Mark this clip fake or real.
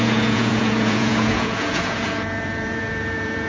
fake